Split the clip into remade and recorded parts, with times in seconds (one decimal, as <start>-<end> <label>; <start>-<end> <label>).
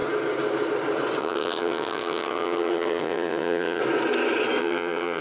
0.0-1.2 recorded; 1.2-3.8 remade; 3.8-4.6 recorded; 4.6-5.2 remade